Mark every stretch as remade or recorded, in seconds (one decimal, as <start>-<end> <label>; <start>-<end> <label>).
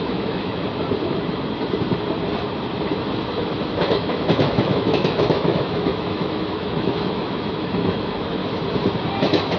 0.0-0.6 remade; 0.6-3.9 recorded; 3.9-8.4 remade; 8.4-9.2 recorded; 9.2-9.6 remade